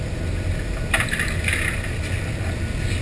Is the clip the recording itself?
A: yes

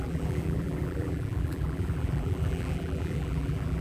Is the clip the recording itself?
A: no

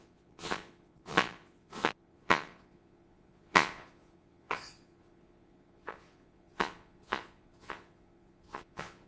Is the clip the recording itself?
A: no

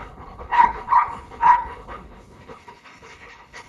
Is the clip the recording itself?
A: no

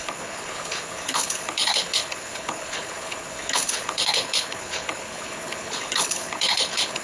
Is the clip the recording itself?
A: no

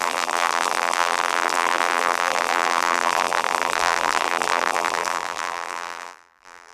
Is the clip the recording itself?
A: no